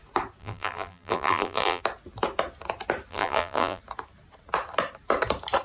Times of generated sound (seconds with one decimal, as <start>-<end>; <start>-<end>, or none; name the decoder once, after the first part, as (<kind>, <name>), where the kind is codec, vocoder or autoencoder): 0.4-1.8 (vocoder, BigVGAN v2); 3.1-3.8